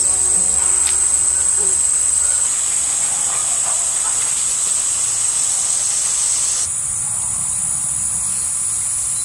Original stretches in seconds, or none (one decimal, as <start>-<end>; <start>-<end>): 0.0-9.2